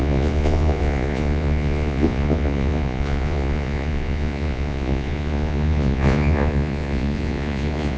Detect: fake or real fake